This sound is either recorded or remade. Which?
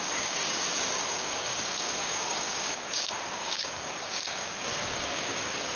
remade